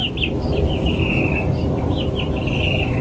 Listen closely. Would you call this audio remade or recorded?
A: recorded